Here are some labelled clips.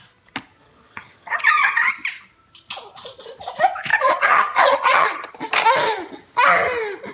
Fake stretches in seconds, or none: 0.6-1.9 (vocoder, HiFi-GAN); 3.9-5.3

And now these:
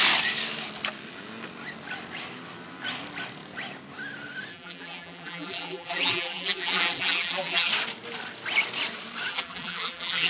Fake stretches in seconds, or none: 4.5-7.7 (vocoder, BigVGAN v2); 9.3-10.3

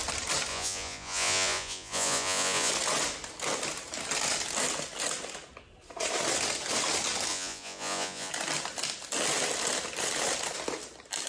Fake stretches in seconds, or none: 0.5-2.7 (vocoder, Vocos); 7.3-8.3

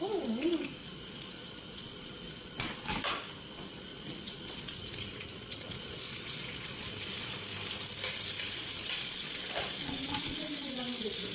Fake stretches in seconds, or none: 0.0-2.9 (vocoder, Vocos); 3.5-7.5; 8.4-11.3

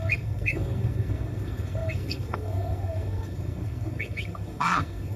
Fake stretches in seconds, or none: 0.0-5.2 (codec, SNAC)

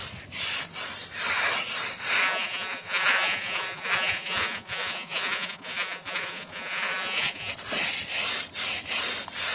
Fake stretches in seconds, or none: 2.2-7.5 (vocoder, Vocos)

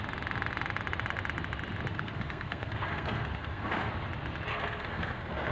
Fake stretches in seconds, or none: 1.9-3.9 (codec, SNAC); 4.5-5.5